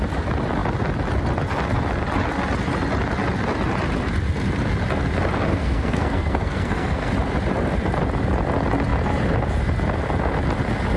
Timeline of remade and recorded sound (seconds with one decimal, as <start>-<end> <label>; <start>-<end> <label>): 0.0-5.5 recorded; 5.5-7.1 remade; 7.1-11.0 recorded